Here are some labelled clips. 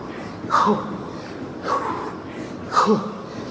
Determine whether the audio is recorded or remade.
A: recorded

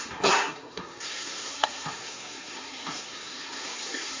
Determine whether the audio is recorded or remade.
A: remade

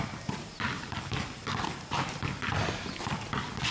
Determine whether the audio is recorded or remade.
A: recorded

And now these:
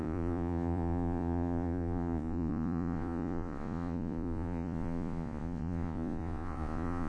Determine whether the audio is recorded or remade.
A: remade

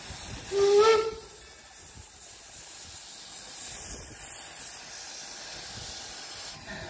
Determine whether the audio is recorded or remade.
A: recorded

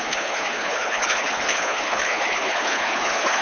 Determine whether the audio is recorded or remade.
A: remade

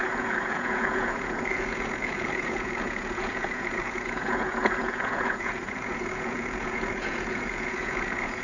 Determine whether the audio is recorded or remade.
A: remade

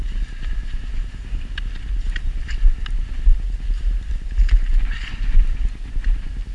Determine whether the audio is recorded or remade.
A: recorded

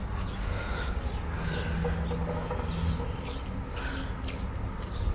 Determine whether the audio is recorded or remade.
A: recorded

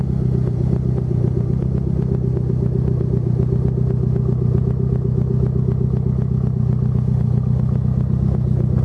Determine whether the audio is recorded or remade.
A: recorded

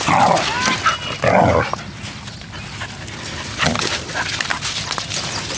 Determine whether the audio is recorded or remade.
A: recorded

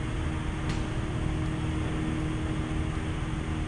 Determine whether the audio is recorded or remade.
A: recorded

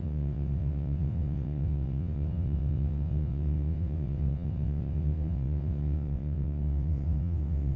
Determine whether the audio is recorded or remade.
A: remade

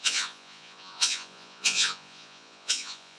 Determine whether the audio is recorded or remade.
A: remade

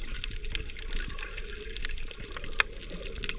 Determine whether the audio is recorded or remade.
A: recorded